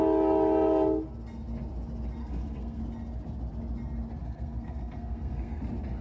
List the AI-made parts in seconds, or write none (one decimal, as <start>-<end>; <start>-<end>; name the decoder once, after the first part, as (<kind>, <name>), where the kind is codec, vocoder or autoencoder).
2.2-2.8 (codec, SNAC); 4.2-5.6